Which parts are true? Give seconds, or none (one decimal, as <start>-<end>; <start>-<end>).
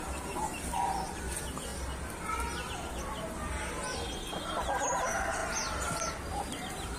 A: 0.0-7.0